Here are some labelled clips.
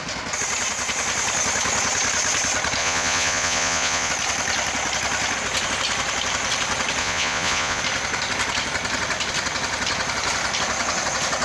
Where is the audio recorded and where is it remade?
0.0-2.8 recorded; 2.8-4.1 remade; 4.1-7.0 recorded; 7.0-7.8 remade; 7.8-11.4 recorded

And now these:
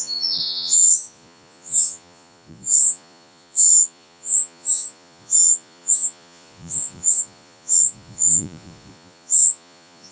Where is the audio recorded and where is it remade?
0.0-10.1 remade

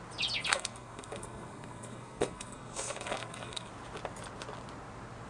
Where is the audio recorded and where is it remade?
0.0-0.5 recorded; 0.5-3.7 remade; 3.7-5.3 recorded

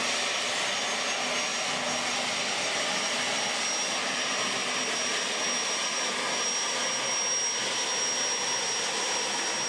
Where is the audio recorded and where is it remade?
0.0-9.7 recorded

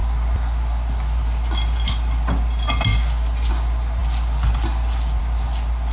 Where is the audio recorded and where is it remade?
0.0-5.9 recorded

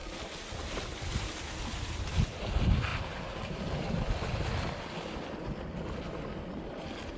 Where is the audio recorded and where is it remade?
0.0-2.0 remade; 2.0-2.9 recorded; 2.9-4.2 remade; 4.2-7.2 recorded